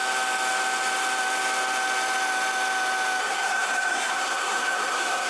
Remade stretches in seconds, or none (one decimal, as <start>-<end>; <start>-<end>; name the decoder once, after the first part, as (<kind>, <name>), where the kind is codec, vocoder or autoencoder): 3.2-5.3 (codec, SNAC)